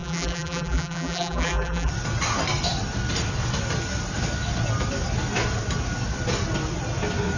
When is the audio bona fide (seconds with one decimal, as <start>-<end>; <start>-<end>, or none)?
1.9-7.4